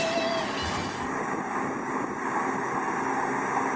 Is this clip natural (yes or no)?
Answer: yes